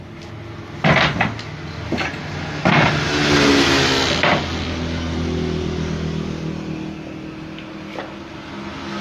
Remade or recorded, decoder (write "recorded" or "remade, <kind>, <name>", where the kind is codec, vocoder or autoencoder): recorded